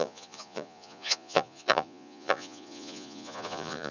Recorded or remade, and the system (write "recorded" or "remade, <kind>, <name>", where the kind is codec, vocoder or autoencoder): remade, vocoder, Vocos